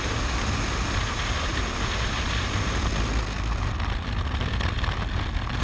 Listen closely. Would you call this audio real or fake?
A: real